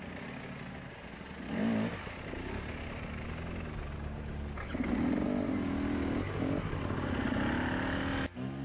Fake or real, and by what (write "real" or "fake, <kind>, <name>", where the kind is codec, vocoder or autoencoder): real